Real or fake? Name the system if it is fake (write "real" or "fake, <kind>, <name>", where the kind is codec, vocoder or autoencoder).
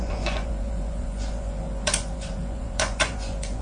fake, vocoder, Vocos